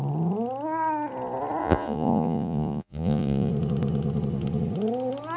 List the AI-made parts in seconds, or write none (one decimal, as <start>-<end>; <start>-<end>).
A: 1.6-3.5